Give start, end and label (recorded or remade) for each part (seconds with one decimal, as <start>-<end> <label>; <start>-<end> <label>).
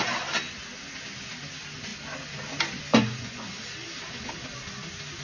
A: 0.0-2.9 recorded; 2.9-3.5 remade; 3.5-5.2 recorded